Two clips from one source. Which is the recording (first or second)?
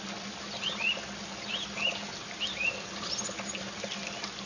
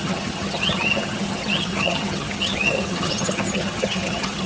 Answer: first